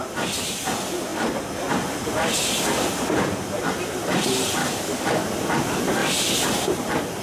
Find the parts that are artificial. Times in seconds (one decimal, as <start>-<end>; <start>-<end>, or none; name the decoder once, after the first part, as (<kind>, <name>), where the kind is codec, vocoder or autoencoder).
4.6-5.2 (codec, DAC)